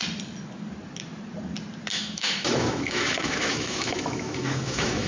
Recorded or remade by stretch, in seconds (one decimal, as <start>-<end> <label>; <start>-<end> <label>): 0.0-1.9 recorded; 1.9-5.1 remade